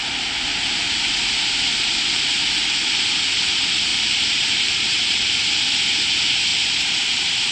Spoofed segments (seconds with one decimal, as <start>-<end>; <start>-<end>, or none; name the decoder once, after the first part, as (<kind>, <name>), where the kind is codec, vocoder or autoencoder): 3.9-5.5 (vocoder, BigVGAN v2); 6.5-7.5